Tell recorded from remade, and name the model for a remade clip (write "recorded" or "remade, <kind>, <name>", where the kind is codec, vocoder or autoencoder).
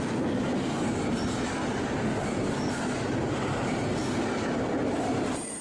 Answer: recorded